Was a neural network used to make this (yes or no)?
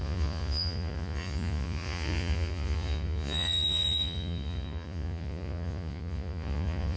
yes